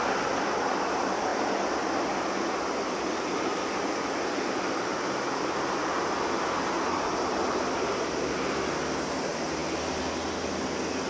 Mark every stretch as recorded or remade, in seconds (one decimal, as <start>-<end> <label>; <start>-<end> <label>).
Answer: 0.0-11.1 recorded